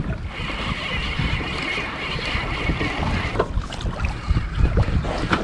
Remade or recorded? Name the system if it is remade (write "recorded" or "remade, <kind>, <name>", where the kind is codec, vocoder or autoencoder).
recorded